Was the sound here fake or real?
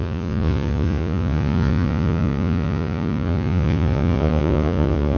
fake